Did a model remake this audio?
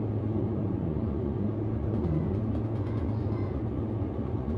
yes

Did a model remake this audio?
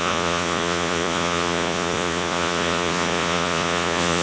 yes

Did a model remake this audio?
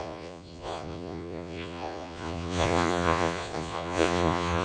yes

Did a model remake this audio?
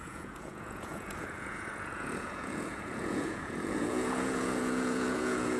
yes